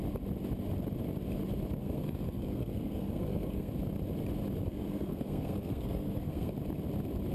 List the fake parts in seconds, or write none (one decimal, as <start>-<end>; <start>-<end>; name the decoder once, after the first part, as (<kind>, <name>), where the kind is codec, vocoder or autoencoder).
1.8-3.7 (codec, SNAC); 4.6-6.5